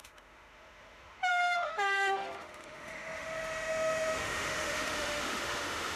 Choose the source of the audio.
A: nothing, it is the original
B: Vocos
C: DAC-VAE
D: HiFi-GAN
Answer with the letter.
C